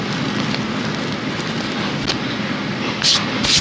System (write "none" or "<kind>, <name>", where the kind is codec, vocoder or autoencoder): none